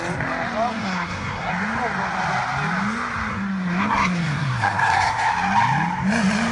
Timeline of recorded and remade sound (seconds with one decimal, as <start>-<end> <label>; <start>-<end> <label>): 0.0-0.7 recorded; 0.7-1.5 remade; 1.5-3.3 recorded; 3.3-5.3 remade; 5.3-6.5 recorded